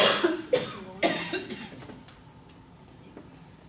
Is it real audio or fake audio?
real